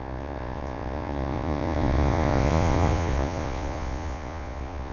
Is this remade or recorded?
remade